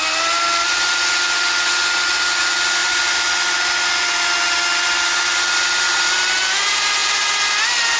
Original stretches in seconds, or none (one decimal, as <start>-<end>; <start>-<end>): 0.0-2.8; 3.3-8.0